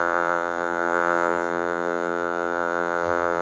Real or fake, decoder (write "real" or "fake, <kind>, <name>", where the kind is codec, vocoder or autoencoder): fake, vocoder, BigVGAN v2